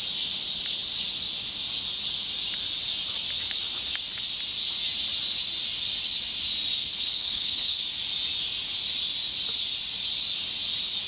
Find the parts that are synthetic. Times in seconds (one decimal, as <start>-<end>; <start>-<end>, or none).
6.8-7.8